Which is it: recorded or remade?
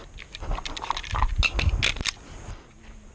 recorded